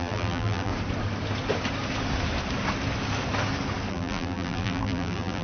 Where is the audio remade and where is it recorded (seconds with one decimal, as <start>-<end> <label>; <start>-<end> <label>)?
0.0-0.7 remade; 0.7-3.9 recorded; 3.9-5.4 remade